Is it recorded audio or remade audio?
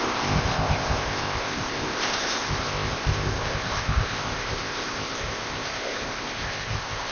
remade